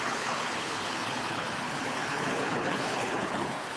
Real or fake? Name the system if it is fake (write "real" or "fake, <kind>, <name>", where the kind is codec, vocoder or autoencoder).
fake, codec, HILCodec